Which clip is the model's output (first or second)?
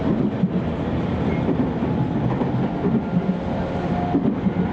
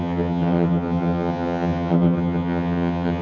second